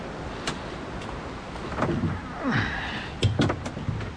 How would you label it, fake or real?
real